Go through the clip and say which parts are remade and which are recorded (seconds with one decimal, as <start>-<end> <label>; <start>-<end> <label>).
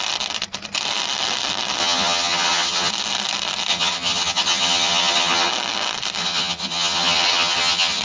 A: 0.0-1.8 recorded; 1.8-2.9 remade; 2.9-3.7 recorded; 3.7-5.5 remade; 5.5-6.2 recorded; 6.2-8.0 remade